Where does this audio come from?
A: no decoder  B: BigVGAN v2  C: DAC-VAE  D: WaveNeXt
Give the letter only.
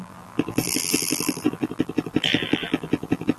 B